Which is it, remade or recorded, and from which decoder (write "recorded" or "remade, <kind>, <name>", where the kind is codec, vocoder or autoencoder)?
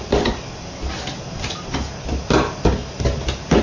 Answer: recorded